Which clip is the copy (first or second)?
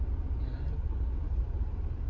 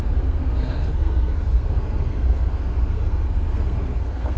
second